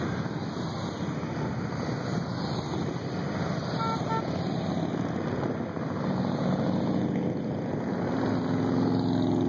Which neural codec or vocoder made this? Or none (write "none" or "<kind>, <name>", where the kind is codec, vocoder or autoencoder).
none